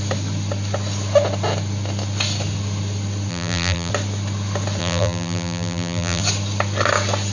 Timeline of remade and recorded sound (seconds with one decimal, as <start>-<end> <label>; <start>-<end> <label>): 0.0-3.3 recorded; 3.3-3.9 remade; 3.9-4.8 recorded; 4.8-6.2 remade; 6.2-7.3 recorded